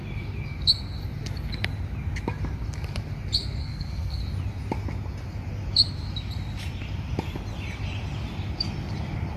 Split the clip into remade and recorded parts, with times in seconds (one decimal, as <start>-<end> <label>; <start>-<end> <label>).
0.0-3.6 recorded; 3.6-4.2 remade; 4.2-9.4 recorded